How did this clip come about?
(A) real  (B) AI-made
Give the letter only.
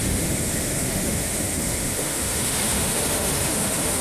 B